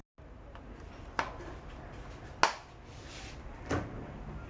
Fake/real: real